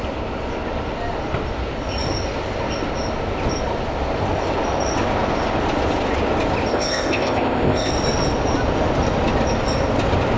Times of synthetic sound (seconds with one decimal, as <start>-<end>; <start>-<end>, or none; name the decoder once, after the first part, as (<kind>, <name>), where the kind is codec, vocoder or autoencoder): 6.7-7.9 (codec, ZipCodec)